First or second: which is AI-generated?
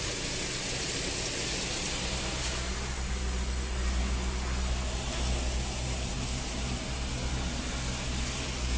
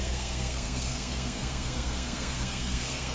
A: second